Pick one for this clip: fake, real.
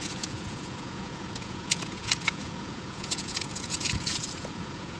fake